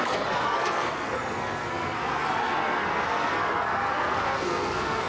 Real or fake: fake